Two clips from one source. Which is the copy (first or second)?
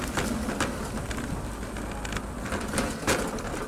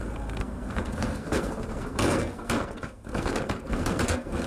second